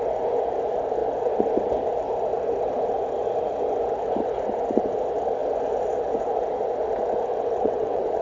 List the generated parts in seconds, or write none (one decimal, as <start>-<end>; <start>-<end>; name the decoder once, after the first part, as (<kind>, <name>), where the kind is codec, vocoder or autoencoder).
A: 7.3-8.2 (vocoder, WaveNeXt)